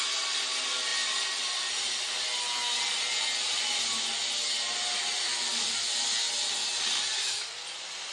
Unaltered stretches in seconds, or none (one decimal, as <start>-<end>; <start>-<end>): 0.0-8.1